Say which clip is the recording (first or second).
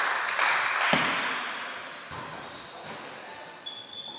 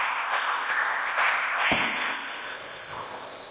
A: first